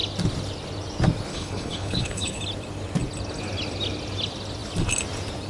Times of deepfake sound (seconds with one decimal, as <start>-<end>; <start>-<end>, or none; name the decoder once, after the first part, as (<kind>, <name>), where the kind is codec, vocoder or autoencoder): 1.3-2.4 (codec, HILCodec)